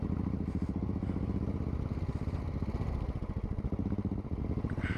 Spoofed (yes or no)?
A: no